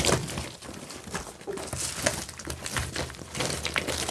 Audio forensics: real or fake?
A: real